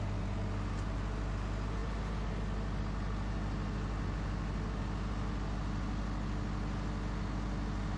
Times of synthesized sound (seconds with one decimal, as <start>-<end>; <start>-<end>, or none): none